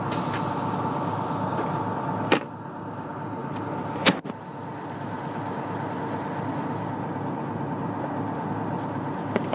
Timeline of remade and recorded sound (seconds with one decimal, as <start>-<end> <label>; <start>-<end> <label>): 0.0-9.5 recorded

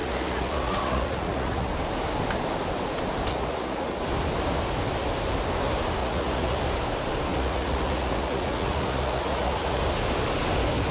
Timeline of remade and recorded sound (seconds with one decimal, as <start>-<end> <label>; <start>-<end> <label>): 0.0-1.7 remade; 1.7-3.3 recorded; 3.3-4.0 remade; 4.0-6.0 recorded; 6.0-6.6 remade; 6.6-7.3 recorded; 7.3-9.8 remade; 9.8-10.9 recorded

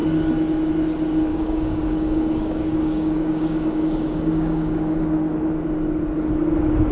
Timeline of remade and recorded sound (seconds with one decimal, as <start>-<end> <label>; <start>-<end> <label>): 0.0-1.3 recorded; 1.3-5.0 remade; 5.0-6.9 recorded

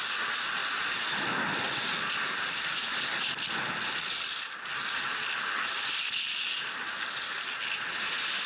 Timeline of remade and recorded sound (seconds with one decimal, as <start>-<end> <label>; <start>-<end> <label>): 0.0-8.5 recorded

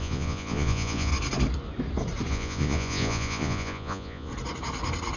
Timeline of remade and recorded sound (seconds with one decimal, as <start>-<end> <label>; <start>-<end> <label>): 0.0-1.1 remade; 1.1-2.3 recorded; 2.3-4.3 remade; 4.3-5.2 recorded

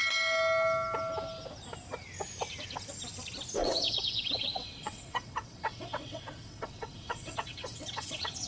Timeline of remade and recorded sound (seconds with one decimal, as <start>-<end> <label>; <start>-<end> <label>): 0.0-3.6 recorded; 3.6-8.5 remade

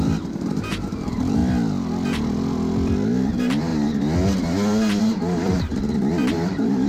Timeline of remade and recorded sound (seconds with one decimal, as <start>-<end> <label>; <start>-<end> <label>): 0.0-1.4 remade; 1.4-3.3 recorded; 3.3-3.7 remade; 3.7-5.0 recorded; 5.0-5.7 remade; 5.7-6.3 recorded; 6.3-6.9 remade

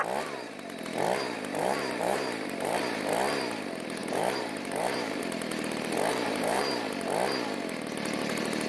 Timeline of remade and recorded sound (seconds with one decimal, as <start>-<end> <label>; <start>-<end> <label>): 0.0-1.6 recorded; 1.6-2.8 remade; 2.8-4.0 recorded; 4.0-5.2 remade; 5.2-6.1 recorded; 6.1-6.6 remade; 6.6-8.7 recorded